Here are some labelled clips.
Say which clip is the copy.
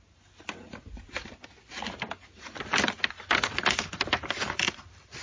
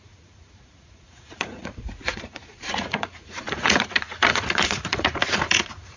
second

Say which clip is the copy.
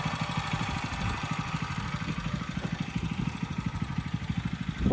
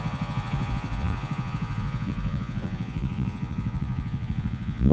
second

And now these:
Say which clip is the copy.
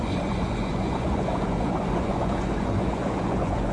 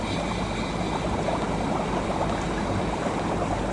first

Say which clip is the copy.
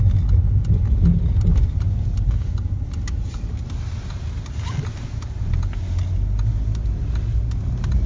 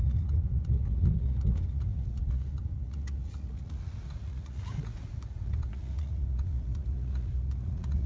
second